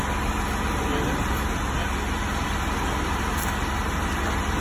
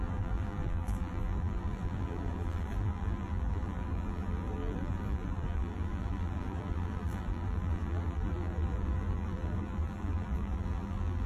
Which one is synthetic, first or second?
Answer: second